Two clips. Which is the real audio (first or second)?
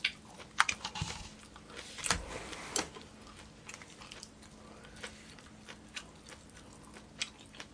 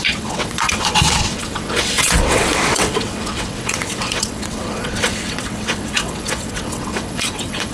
first